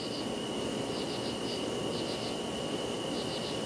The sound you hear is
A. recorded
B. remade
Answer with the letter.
A